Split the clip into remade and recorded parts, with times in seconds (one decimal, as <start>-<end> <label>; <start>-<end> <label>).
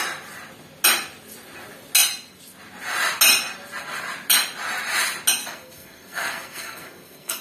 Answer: 0.0-5.4 recorded; 5.4-7.4 remade